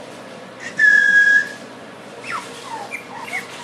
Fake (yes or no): yes